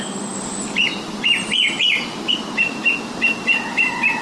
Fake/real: real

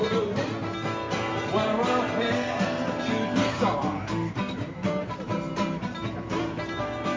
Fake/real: fake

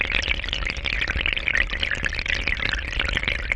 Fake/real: real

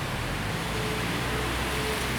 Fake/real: real